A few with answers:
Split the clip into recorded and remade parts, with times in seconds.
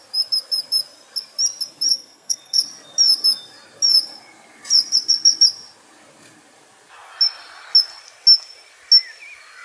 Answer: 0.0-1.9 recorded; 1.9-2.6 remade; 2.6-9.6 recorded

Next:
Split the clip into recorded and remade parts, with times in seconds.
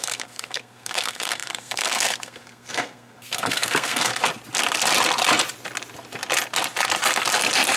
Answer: 0.0-4.1 remade; 4.1-7.8 recorded